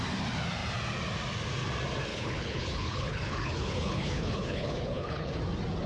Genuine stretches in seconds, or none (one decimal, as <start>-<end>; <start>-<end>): 0.0-2.1; 5.4-5.9